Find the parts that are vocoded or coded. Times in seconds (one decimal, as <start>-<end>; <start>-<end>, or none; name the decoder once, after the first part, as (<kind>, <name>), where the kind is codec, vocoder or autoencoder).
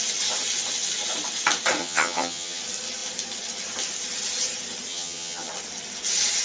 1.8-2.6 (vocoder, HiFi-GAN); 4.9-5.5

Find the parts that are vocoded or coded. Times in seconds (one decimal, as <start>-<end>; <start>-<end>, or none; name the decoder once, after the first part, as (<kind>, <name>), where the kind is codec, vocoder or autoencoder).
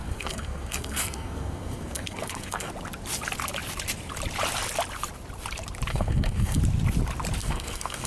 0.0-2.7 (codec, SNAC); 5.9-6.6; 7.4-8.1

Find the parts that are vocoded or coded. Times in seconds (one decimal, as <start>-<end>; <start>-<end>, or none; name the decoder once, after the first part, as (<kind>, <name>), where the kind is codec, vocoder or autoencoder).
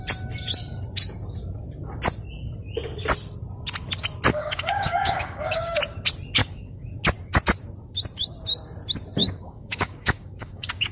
4.3-5.8 (codec, DAC); 6.4-6.9; 9.2-10.9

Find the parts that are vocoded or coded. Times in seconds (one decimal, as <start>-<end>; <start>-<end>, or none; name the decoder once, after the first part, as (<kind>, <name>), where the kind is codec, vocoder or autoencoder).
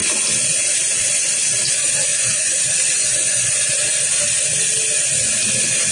2.1-2.6 (vocoder, Vocos); 3.0-3.8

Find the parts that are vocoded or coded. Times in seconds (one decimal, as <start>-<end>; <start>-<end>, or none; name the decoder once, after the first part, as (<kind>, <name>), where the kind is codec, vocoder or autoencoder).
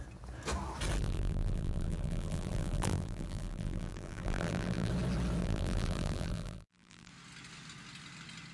1.0-4.9 (vocoder, BigVGAN v2); 5.4-7.1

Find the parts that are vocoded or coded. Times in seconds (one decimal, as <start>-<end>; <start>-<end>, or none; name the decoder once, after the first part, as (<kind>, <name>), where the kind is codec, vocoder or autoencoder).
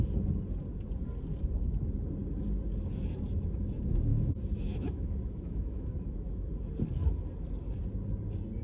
4.1-6.5 (autoencoder, DAC-VAE)